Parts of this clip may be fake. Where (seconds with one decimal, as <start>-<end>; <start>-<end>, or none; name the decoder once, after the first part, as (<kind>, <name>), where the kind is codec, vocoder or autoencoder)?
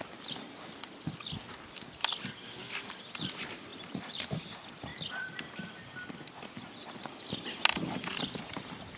none